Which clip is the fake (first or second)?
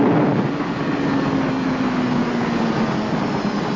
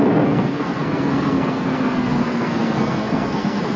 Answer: second